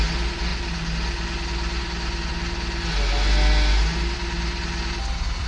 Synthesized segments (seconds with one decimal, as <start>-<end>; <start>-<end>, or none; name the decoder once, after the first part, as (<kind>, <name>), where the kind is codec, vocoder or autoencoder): none